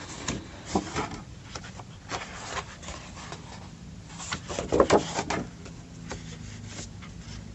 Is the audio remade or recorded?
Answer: recorded